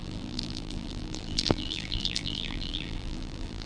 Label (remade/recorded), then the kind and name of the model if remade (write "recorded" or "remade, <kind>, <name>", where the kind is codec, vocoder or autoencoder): remade, vocoder, BigVGAN v2